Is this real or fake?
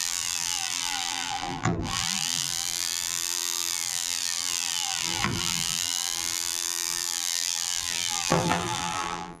fake